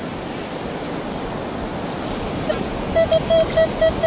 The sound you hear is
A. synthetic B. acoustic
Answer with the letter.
B